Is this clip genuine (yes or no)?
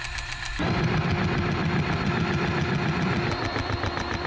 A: yes